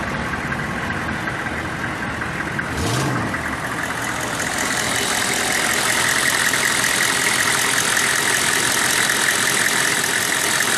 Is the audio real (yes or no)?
yes